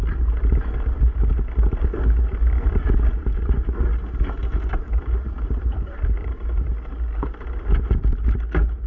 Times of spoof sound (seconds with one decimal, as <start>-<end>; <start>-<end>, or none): 4.4-6.7